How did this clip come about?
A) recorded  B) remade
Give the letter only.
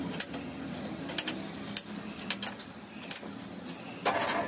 A